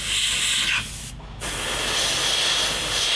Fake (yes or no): no